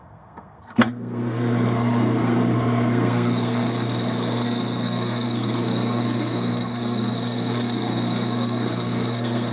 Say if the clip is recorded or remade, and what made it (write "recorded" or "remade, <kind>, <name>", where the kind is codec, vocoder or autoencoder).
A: remade, codec, SNAC